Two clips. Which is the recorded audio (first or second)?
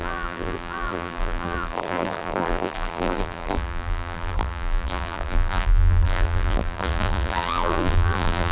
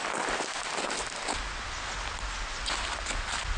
second